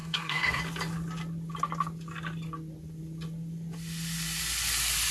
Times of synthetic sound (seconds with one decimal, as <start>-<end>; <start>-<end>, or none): 0.0-0.6